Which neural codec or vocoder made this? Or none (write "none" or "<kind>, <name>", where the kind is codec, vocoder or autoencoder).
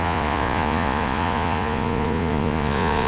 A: vocoder, Vocos